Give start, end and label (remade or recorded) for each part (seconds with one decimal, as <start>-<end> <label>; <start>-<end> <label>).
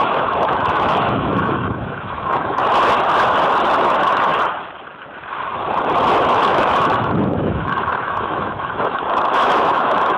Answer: 0.0-2.6 remade; 2.6-3.8 recorded; 3.8-4.3 remade; 4.3-6.3 recorded; 6.3-10.2 remade